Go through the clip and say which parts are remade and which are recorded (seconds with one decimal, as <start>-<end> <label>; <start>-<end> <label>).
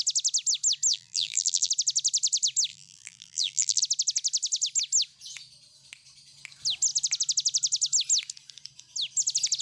0.0-0.9 recorded; 0.9-1.7 remade; 1.7-2.7 recorded; 2.7-3.8 remade; 3.8-9.6 recorded